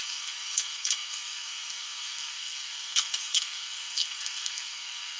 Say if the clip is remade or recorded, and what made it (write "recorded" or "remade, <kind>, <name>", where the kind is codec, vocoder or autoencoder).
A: remade, codec, SNAC